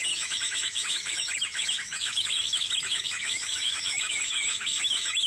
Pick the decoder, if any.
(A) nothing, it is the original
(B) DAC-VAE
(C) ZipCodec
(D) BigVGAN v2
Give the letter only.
B